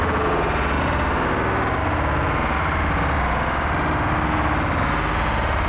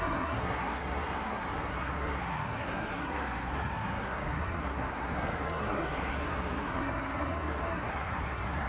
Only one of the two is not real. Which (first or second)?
second